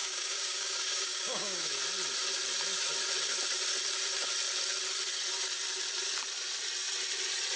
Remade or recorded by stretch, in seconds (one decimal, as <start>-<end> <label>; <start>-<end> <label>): 0.0-1.7 remade; 1.7-7.6 recorded

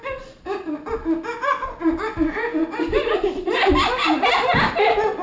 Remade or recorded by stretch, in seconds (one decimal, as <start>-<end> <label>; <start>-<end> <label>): 0.0-2.6 recorded; 2.6-4.3 remade; 4.3-5.2 recorded

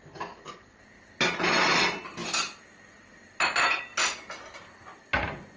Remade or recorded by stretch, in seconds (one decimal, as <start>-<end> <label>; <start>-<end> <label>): 0.0-2.2 recorded; 2.2-3.8 remade; 3.8-5.6 recorded

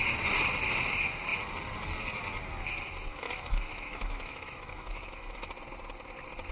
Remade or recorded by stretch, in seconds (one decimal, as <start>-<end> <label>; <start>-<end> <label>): 0.0-3.1 recorded; 3.1-5.5 remade; 5.5-6.5 recorded

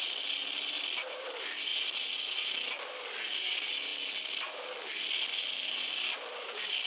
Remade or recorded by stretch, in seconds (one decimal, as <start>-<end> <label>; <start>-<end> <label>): 0.0-6.9 recorded